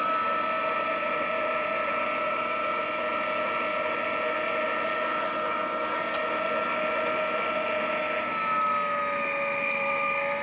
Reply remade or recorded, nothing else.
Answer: recorded